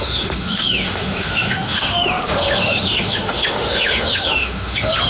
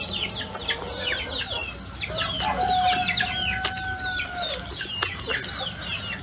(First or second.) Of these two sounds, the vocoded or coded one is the first